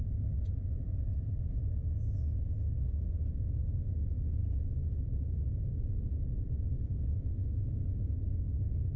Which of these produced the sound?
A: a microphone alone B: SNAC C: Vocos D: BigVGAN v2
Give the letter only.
C